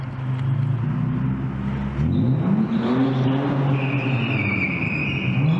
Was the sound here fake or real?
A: real